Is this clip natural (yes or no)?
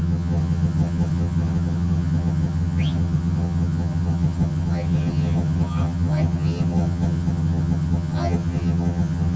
no